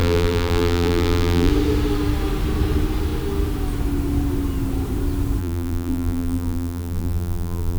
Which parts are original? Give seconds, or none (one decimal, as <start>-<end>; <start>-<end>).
1.5-5.4